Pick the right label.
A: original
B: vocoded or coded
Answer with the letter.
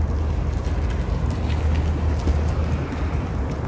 A